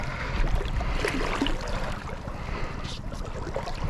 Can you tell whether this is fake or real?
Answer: real